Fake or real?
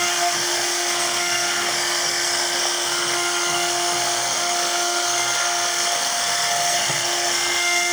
fake